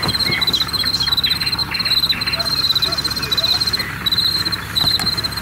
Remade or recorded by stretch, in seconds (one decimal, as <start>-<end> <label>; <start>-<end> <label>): 0.0-5.4 recorded